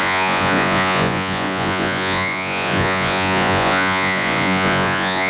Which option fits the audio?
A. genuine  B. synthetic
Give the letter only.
B